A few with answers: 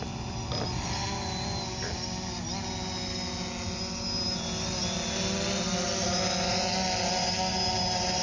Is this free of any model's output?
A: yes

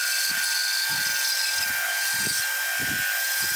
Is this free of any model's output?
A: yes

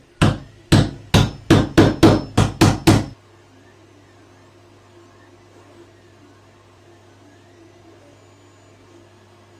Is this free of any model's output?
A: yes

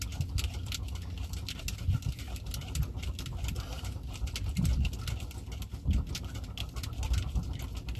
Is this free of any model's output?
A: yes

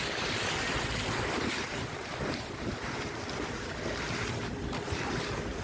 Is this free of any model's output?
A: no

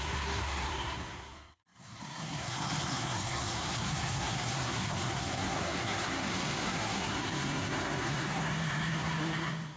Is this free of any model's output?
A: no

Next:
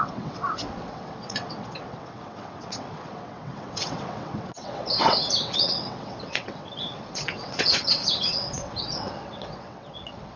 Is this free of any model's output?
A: no